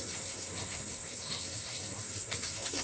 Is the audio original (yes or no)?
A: no